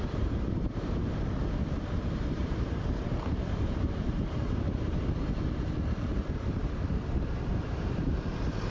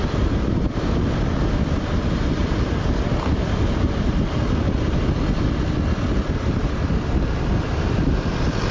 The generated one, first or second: first